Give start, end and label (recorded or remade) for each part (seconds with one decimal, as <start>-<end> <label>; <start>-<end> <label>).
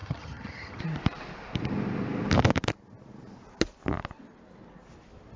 0.0-0.8 remade; 0.8-5.4 recorded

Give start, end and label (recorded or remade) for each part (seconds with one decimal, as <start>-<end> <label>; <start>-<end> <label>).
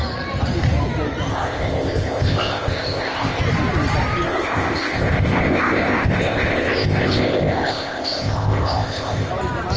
0.0-1.3 recorded; 1.3-3.4 remade; 3.4-4.3 recorded; 4.3-9.3 remade; 9.3-9.8 recorded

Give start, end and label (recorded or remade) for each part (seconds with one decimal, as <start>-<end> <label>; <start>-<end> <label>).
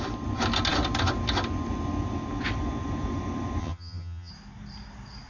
0.0-3.6 recorded; 3.6-4.3 remade; 4.3-5.3 recorded